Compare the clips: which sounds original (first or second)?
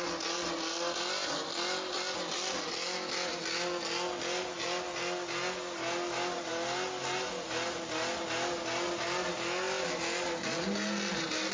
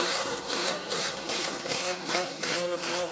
first